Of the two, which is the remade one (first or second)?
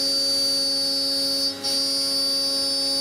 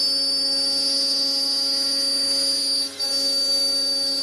second